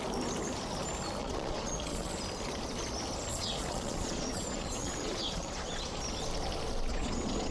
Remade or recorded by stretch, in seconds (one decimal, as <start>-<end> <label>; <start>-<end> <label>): 0.0-1.2 recorded; 1.2-2.1 remade; 2.1-3.3 recorded; 3.3-6.0 remade; 6.0-6.9 recorded; 6.9-7.5 remade